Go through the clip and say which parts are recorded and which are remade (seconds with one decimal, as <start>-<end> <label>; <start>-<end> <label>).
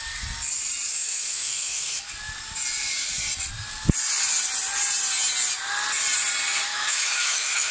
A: 0.0-0.9 recorded; 0.9-2.1 remade; 2.1-6.7 recorded; 6.7-7.7 remade